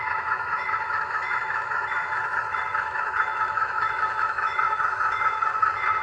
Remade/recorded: remade